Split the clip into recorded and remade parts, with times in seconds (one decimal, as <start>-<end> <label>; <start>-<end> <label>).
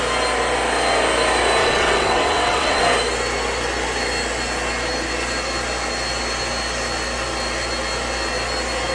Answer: 0.0-1.6 recorded; 1.6-2.8 remade; 2.8-8.9 recorded